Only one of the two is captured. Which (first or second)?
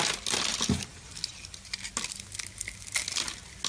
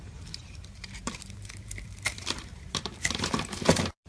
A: first